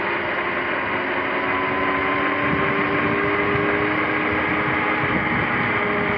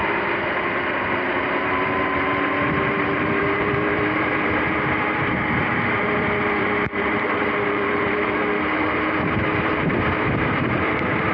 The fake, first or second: second